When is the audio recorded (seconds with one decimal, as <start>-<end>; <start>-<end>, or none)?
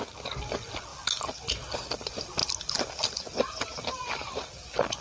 0.0-5.0